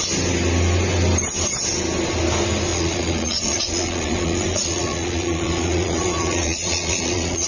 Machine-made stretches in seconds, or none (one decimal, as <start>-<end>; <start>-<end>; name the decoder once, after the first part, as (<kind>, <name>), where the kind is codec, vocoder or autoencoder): 2.7-7.5 (vocoder, Vocos)